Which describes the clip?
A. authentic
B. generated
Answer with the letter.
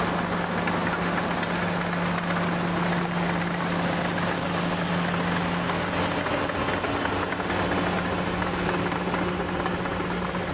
A